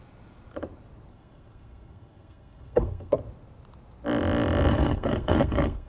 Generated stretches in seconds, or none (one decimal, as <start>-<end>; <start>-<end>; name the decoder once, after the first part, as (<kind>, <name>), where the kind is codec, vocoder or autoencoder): 1.1-3.1 (codec, SNAC); 4.7-5.9